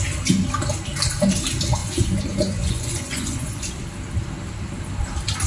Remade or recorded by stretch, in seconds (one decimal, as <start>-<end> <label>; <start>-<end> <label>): 0.0-1.8 recorded; 1.8-3.7 remade; 3.7-5.5 recorded